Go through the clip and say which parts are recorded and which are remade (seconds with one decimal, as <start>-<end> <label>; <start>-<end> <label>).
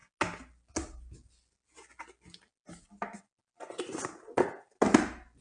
0.0-5.4 recorded